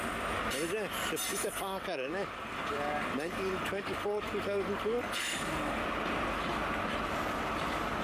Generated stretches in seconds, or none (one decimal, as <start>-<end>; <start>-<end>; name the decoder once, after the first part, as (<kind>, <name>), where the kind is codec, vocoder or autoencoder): 1.3-5.8 (codec, DAC)